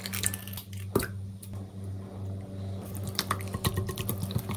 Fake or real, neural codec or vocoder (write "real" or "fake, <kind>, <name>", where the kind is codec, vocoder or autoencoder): real